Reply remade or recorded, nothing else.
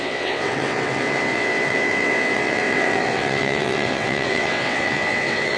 remade